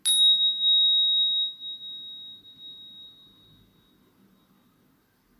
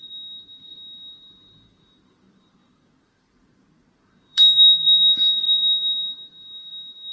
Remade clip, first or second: second